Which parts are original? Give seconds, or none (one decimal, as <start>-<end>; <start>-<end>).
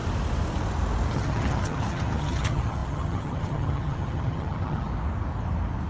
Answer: 0.0-1.1; 4.9-5.9